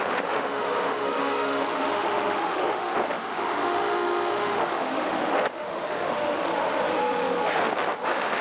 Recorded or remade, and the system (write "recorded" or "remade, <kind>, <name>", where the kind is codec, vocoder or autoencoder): remade, autoencoder, DAC-VAE